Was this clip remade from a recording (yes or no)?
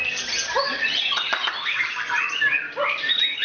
no